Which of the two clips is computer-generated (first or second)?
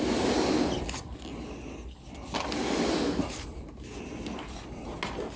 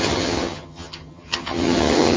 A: second